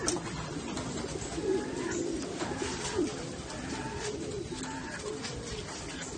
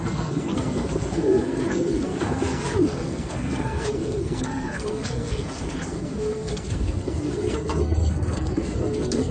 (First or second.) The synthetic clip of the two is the second